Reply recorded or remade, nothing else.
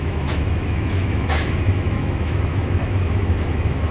remade